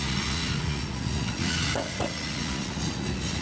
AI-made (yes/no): yes